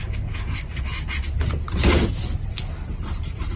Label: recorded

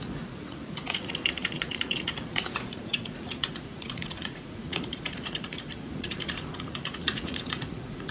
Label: remade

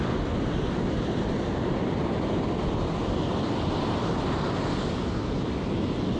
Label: recorded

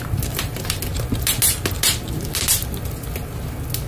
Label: recorded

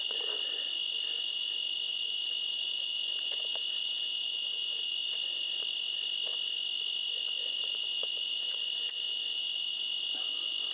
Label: remade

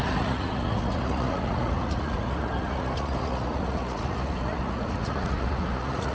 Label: remade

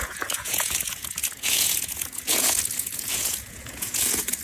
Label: remade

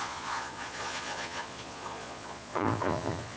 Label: remade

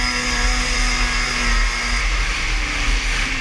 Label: recorded